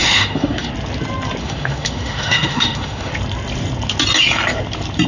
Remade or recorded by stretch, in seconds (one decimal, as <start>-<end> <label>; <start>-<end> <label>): 0.0-0.7 remade; 0.7-1.4 recorded; 1.4-3.1 remade; 3.1-5.1 recorded